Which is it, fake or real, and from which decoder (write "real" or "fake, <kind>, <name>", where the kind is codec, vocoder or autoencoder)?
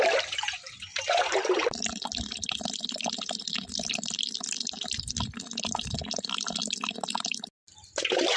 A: real